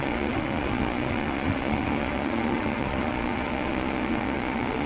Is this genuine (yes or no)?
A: no